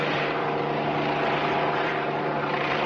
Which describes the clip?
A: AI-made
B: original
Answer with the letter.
A